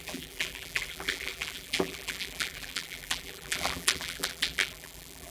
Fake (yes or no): yes